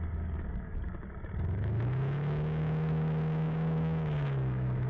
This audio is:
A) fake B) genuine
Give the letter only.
A